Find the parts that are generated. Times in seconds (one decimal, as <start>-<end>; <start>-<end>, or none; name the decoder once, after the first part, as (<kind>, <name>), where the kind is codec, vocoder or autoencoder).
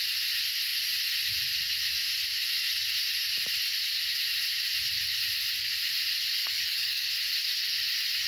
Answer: 6.4-7.1 (codec, DAC)